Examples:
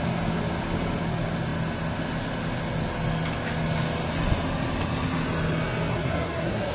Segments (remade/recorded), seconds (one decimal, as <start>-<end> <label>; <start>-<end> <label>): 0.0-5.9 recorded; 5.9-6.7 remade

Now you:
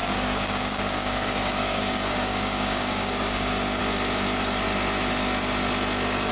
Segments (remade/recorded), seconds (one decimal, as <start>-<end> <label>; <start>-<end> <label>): 0.0-3.8 remade; 3.8-6.3 recorded

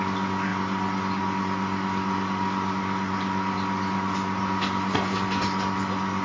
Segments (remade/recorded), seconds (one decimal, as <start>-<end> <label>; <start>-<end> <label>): 0.0-6.2 recorded

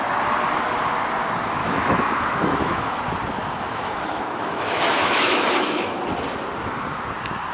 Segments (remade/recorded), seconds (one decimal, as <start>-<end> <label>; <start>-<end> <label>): 0.0-1.6 recorded; 1.6-3.0 remade; 3.0-3.4 recorded; 3.4-6.0 remade; 6.0-7.5 recorded

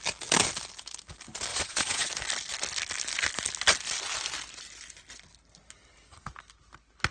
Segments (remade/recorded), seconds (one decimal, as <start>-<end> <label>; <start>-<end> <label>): 0.0-1.5 recorded; 1.5-2.1 remade; 2.1-7.1 recorded